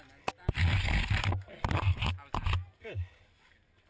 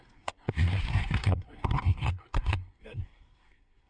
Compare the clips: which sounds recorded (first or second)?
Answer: first